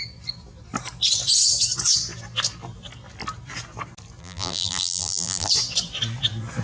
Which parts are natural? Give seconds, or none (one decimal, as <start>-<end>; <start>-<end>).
0.0-4.2; 5.5-6.6